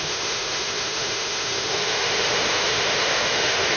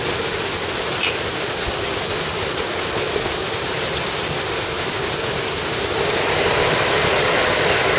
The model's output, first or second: first